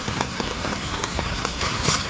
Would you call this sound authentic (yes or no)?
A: no